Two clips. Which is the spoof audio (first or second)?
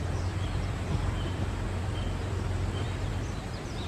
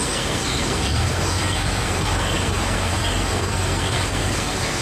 second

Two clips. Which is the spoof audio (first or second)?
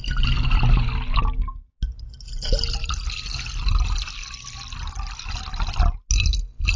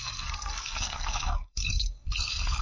second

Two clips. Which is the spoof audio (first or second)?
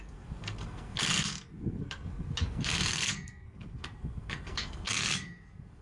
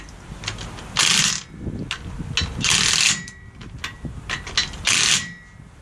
first